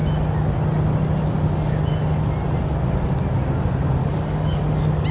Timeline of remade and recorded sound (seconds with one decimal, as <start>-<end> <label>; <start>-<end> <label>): 0.0-4.0 recorded; 4.0-4.6 remade; 4.6-5.1 recorded